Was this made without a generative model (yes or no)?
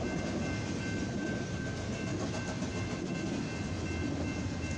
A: yes